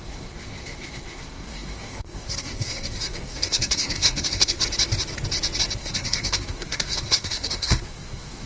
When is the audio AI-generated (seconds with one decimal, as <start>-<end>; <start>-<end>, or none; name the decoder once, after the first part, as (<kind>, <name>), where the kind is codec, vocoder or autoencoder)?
0.0-4.6 (codec, SNAC); 5.8-8.5